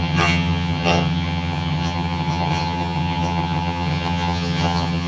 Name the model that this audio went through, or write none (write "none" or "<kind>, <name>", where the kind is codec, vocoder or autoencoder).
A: vocoder, HiFi-GAN